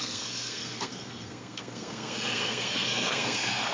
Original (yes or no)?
no